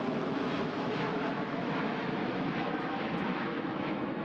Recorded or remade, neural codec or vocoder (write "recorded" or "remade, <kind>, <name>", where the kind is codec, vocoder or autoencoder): remade, autoencoder, DAC-VAE